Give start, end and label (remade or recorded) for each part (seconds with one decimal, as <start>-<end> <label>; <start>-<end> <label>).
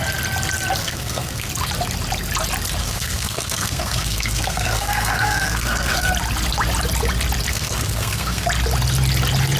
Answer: 0.0-0.8 recorded; 0.8-1.5 remade; 1.5-2.8 recorded; 2.8-6.1 remade; 6.1-7.5 recorded; 7.5-8.5 remade; 8.5-9.6 recorded